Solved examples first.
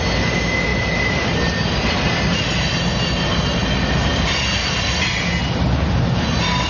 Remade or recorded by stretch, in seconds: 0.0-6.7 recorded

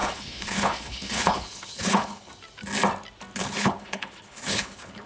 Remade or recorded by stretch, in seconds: 0.0-2.3 remade; 2.3-3.4 recorded; 3.4-5.1 remade

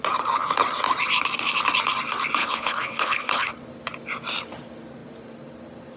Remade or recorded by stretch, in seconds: 0.0-2.4 recorded; 2.4-3.5 remade; 3.5-6.0 recorded

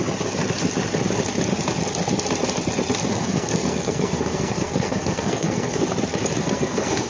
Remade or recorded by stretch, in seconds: 0.0-3.1 recorded; 3.1-5.8 remade; 5.8-6.4 recorded; 6.4-7.1 remade